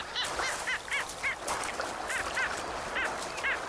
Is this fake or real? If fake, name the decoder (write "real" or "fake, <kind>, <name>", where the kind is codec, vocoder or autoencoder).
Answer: real